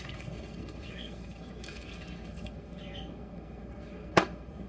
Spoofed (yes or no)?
yes